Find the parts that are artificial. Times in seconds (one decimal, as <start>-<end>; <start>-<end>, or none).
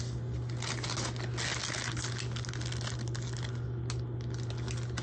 none